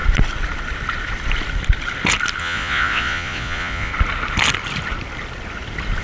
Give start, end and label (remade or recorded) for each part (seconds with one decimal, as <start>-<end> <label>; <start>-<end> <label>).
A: 0.0-2.4 recorded; 2.4-3.9 remade; 3.9-6.0 recorded